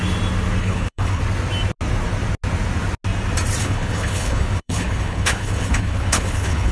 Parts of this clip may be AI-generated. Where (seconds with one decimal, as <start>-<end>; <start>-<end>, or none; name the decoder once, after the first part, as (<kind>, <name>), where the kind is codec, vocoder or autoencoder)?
0.6-1.2 (codec, HILCodec); 3.6-6.7

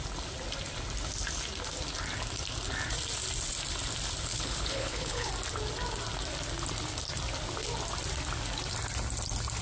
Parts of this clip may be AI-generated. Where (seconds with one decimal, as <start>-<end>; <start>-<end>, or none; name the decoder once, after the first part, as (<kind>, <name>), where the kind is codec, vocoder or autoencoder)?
4.3-5.3 (codec, HILCodec)